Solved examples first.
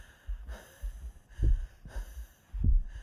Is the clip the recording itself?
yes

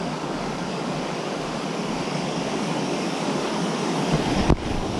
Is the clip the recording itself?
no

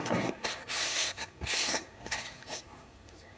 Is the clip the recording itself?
no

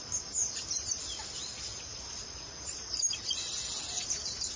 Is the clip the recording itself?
yes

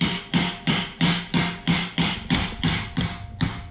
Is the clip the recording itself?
yes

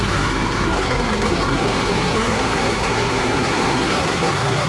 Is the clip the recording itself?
no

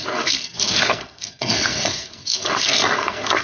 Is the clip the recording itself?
no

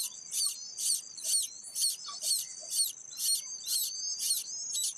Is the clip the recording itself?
yes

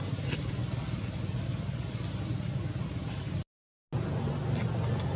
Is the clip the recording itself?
yes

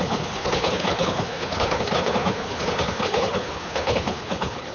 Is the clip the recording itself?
no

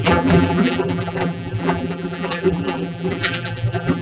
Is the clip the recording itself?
no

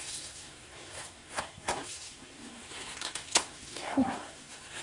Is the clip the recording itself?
no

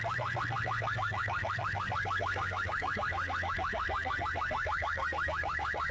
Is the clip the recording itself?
no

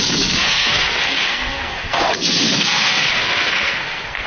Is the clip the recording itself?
no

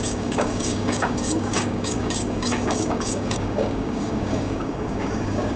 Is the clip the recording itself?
no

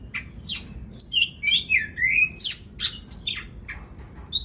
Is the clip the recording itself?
yes